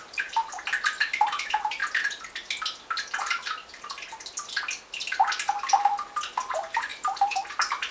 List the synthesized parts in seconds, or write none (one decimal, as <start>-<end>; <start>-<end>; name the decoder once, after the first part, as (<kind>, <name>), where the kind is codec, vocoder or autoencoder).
0.0-0.4 (vocoder, BigVGAN v2); 1.0-1.8; 6.5-7.9